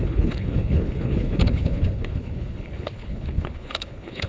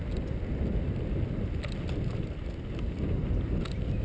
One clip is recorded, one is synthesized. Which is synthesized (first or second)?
first